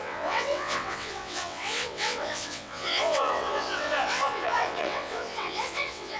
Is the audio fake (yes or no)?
yes